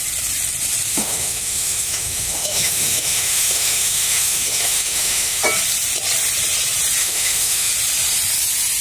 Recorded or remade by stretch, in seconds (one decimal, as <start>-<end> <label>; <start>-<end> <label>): 0.0-0.9 recorded; 0.9-5.4 remade; 5.4-7.0 recorded; 7.0-7.7 remade; 7.7-8.8 recorded